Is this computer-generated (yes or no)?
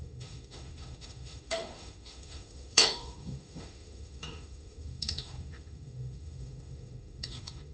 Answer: yes